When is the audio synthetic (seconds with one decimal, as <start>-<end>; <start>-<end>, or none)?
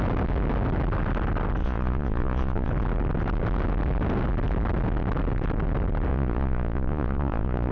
1.6-2.7; 6.1-7.7